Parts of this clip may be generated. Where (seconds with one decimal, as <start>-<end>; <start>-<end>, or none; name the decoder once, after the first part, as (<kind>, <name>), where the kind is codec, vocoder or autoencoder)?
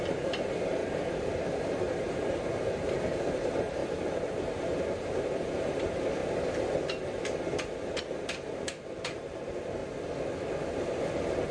0.0-0.8 (vocoder, BigVGAN v2); 1.6-6.2; 8.0-9.8; 10.8-11.5